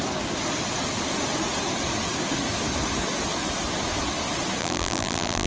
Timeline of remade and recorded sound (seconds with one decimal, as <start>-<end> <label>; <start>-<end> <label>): 0.0-4.6 recorded; 4.6-5.5 remade